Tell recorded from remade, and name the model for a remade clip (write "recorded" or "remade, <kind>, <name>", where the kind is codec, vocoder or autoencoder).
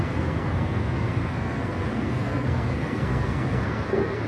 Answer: remade, codec, SNAC